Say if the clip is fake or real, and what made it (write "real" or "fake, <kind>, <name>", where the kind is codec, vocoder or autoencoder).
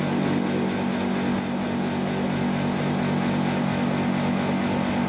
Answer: real